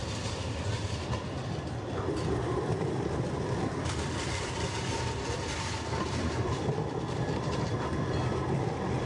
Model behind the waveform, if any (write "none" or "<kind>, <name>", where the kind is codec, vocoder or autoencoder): vocoder, BigVGAN v2